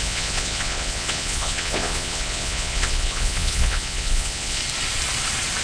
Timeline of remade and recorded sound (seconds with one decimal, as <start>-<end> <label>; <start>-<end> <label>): 0.0-4.6 remade; 4.6-5.6 recorded